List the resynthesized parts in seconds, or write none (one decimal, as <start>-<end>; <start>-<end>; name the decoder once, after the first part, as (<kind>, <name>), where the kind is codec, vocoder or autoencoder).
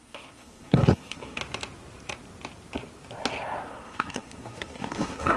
0.0-1.4 (codec, SNAC); 3.6-5.4